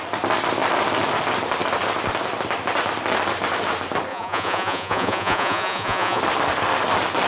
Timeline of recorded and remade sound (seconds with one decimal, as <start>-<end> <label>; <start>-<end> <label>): 0.0-4.1 recorded; 4.1-6.2 remade; 6.2-7.3 recorded